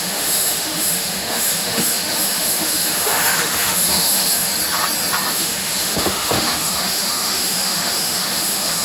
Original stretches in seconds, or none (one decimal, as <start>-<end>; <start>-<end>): 4.5-5.3